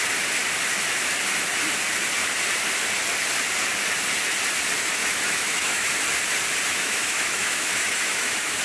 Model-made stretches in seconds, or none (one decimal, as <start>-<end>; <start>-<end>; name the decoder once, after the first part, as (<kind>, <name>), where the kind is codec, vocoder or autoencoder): 5.0-5.9 (autoencoder, DAC-VAE); 6.7-8.6